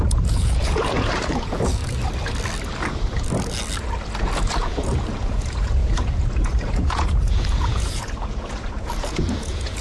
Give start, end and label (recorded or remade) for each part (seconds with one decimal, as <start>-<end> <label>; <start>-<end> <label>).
0.0-1.8 remade; 1.8-4.2 recorded; 4.2-9.8 remade